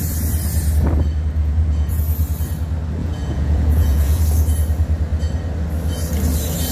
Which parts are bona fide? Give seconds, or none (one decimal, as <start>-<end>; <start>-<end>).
0.0-1.4; 2.0-3.0; 4.2-6.7